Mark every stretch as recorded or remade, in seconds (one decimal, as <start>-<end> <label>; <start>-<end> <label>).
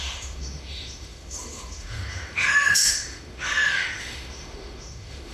0.0-5.3 remade